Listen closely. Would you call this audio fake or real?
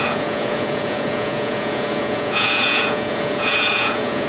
fake